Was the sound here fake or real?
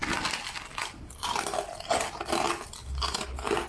real